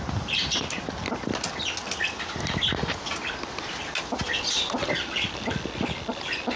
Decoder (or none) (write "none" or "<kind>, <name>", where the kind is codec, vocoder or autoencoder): none